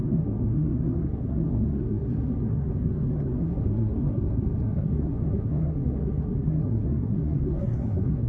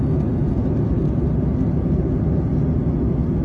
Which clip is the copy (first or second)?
first